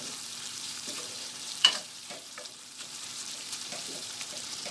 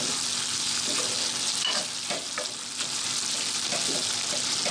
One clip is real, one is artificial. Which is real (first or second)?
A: second